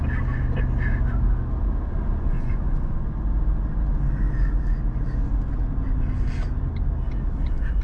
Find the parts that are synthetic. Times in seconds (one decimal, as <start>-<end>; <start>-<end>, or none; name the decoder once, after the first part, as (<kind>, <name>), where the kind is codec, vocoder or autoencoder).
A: 2.2-2.9 (vocoder, Vocos)

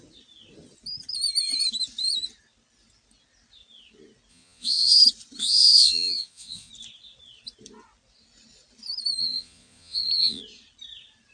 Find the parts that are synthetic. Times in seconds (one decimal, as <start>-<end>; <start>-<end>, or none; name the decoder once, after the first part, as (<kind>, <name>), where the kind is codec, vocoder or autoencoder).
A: 4.3-5.0 (vocoder, Vocos); 5.4-6.7; 9.2-10.4

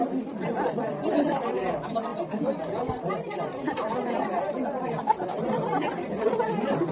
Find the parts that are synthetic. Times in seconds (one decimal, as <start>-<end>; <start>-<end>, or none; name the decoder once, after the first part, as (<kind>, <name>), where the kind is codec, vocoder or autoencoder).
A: none

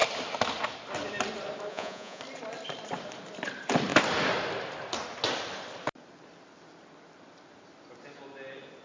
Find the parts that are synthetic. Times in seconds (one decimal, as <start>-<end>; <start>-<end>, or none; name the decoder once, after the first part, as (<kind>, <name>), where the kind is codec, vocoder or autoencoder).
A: 1.7-2.2 (vocoder, Vocos)

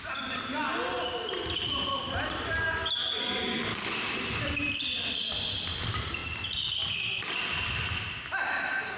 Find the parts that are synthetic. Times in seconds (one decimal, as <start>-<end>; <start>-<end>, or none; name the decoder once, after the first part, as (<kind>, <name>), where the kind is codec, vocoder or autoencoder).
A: none

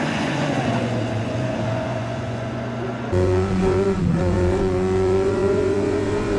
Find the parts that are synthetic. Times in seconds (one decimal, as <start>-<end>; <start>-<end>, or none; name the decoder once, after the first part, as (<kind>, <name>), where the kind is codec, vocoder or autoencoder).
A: 0.0-6.4 (vocoder, Vocos)